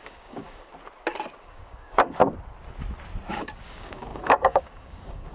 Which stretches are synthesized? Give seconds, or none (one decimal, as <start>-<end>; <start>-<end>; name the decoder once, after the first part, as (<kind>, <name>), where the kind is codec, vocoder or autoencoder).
0.0-0.7 (codec, DAC); 1.4-2.2; 3.3-5.3